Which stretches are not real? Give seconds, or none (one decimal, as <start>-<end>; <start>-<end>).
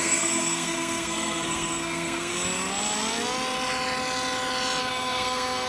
0.0-2.3; 4.8-5.7